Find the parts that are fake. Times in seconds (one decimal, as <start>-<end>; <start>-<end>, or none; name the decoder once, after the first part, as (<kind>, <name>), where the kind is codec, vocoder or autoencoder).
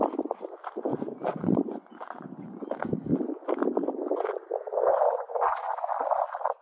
0.9-2.6 (vocoder, Vocos); 4.9-5.9